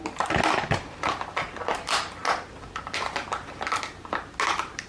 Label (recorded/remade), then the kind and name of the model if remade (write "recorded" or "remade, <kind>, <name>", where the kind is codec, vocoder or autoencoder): recorded